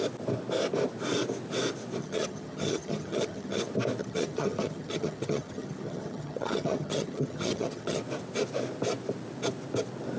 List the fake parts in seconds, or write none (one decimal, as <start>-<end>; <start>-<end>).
2.0-3.6; 4.0-8.0